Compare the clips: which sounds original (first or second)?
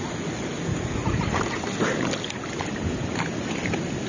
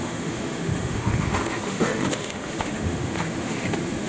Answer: first